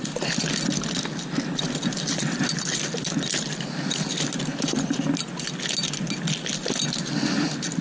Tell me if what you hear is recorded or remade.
recorded